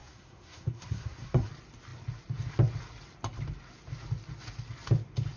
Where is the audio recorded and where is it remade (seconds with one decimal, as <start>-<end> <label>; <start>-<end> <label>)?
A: 0.0-1.5 remade; 1.5-5.4 recorded